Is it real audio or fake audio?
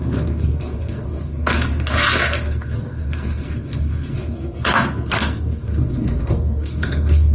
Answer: fake